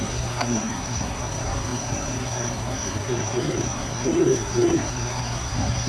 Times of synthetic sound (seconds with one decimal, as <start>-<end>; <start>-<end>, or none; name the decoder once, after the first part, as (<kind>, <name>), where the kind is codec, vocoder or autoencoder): 0.0-5.9 (codec, SNAC)